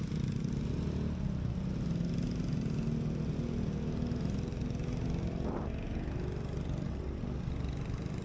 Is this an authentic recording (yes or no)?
yes